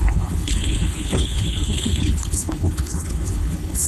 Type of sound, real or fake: fake